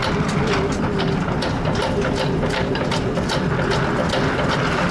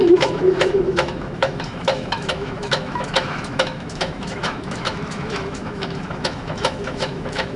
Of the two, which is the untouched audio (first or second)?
first